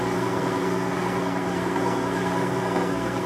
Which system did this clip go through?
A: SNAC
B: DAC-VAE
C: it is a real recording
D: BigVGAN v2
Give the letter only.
A